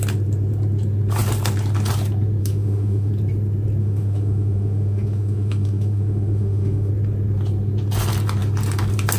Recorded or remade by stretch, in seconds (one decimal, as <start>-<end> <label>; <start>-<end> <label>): 0.0-2.4 recorded; 2.4-3.1 remade; 3.1-3.8 recorded; 3.8-6.9 remade; 6.9-9.2 recorded